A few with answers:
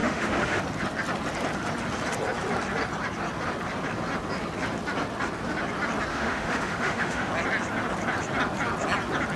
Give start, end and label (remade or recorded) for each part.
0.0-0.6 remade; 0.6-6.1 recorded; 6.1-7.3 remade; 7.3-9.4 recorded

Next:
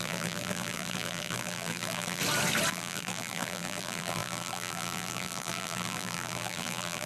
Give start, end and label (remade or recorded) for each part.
0.0-2.2 remade; 2.2-2.7 recorded; 2.7-7.1 remade